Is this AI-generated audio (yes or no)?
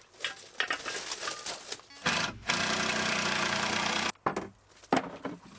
no